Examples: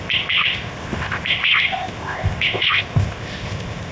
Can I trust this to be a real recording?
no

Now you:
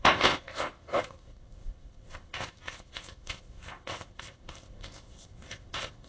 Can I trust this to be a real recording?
no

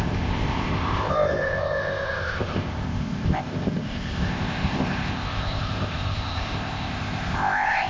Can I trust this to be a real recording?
no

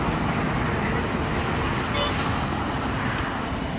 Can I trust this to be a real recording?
yes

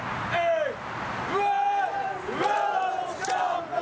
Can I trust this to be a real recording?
yes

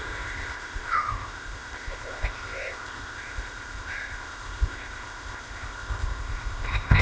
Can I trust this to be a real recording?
no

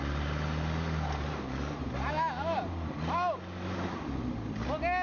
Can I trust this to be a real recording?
yes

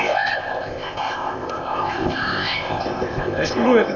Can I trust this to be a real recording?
no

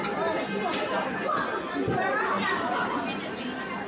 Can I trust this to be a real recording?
yes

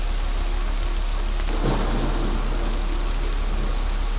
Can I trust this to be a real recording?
yes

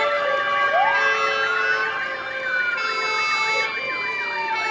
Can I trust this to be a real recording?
yes